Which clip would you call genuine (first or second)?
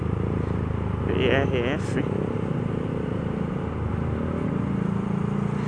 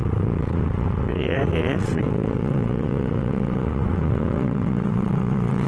first